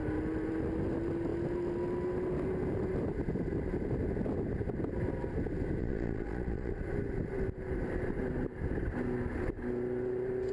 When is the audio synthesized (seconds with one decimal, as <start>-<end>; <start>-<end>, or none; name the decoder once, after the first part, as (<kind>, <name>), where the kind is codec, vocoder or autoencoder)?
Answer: 5.8-6.7 (vocoder, Vocos)